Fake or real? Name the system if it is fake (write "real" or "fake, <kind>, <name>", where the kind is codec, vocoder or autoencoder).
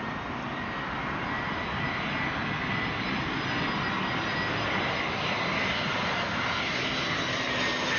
real